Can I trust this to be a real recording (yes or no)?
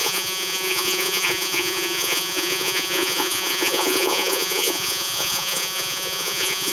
no